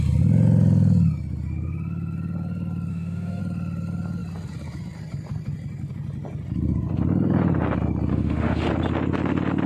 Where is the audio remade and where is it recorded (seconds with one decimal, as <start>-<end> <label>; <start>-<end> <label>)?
0.0-2.9 recorded; 2.9-3.4 remade; 3.4-8.1 recorded; 8.1-8.7 remade; 8.7-9.7 recorded